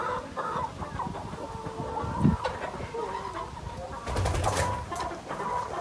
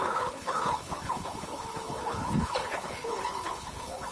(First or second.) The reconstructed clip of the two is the second